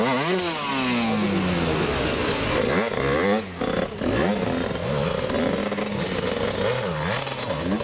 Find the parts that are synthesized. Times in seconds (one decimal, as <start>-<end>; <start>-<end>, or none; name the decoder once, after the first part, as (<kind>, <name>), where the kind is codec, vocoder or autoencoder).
none